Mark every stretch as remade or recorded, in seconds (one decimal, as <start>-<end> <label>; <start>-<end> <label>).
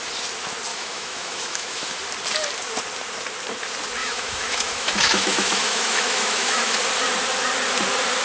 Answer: 0.0-0.7 recorded; 0.7-2.0 remade; 2.0-4.0 recorded; 4.0-6.8 remade; 6.8-8.2 recorded